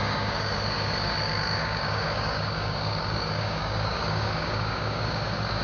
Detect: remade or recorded remade